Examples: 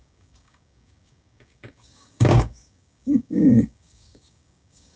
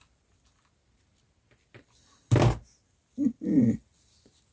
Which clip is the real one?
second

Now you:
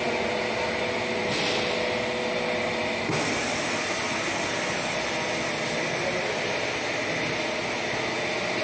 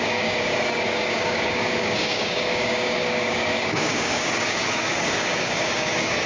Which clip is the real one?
first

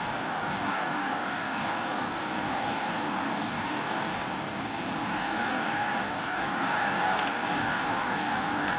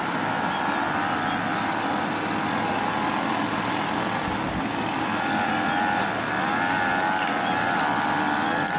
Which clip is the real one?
second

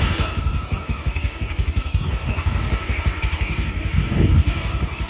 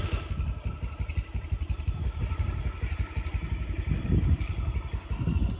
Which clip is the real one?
second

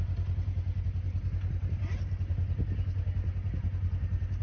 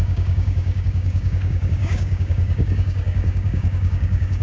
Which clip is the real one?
first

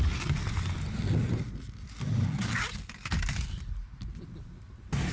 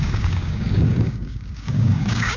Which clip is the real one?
first